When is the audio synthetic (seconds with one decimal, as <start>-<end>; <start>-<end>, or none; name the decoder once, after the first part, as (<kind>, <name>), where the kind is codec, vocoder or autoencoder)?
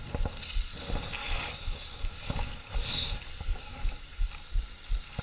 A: 1.2-4.3 (codec, DAC)